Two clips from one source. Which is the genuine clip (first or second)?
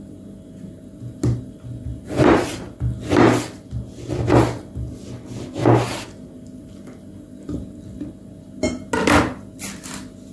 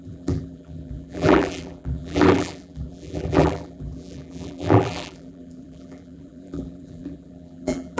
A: first